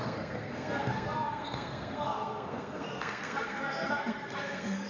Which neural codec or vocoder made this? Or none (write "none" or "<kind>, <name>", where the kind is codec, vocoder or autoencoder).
codec, SNAC